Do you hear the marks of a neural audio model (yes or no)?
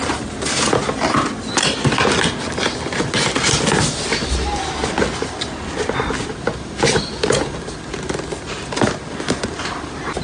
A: no